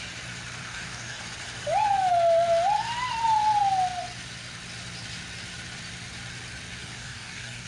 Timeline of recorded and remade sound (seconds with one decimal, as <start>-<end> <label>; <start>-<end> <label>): 0.0-0.6 recorded; 0.6-1.2 remade; 1.2-6.8 recorded; 6.8-7.7 remade